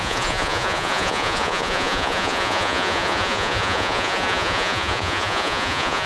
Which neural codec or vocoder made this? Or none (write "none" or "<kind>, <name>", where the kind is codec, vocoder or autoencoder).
vocoder, Vocos